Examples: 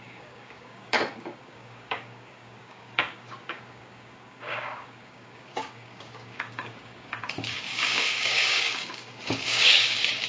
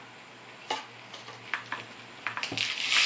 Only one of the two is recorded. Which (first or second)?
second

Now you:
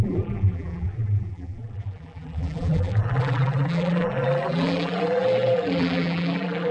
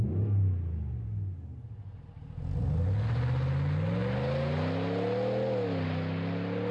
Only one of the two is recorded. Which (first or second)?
second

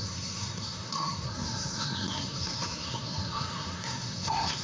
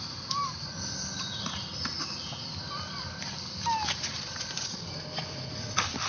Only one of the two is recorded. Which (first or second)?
second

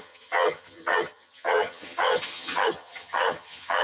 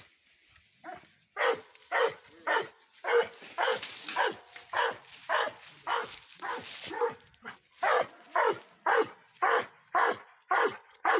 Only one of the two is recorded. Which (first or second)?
second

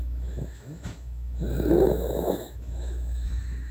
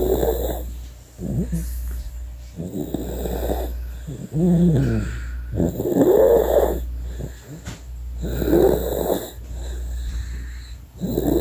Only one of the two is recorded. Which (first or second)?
second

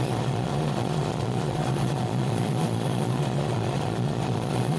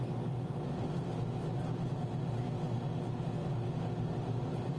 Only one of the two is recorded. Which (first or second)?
second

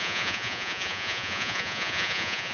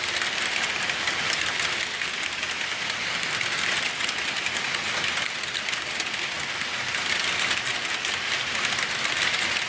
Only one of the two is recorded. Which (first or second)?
second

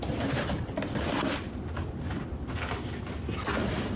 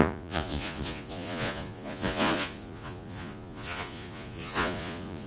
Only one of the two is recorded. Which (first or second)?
first